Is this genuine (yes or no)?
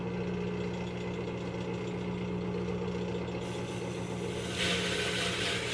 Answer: yes